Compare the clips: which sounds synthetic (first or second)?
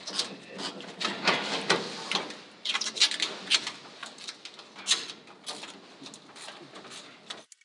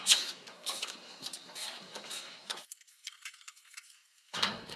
second